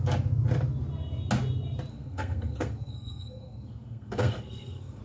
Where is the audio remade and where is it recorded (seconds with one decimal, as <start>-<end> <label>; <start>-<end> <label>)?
0.0-1.9 recorded; 1.9-5.0 remade